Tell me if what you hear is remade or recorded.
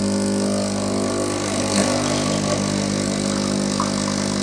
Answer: recorded